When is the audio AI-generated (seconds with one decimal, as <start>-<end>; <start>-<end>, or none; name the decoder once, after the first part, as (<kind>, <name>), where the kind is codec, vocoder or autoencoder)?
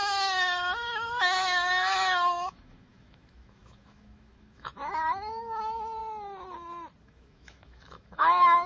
0.0-6.0 (autoencoder, DAC-VAE); 7.0-8.7